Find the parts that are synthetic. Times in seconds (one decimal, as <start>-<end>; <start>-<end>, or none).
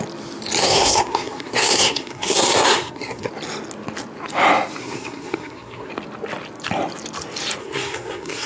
0.6-3.3; 4.8-5.9; 7.6-8.5